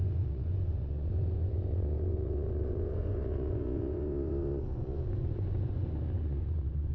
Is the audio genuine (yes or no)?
no